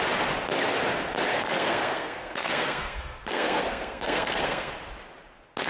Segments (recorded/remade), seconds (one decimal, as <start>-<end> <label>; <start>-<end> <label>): 0.0-1.3 recorded; 1.3-4.7 remade; 4.7-5.7 recorded